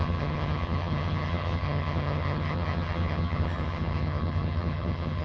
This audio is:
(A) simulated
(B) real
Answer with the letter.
A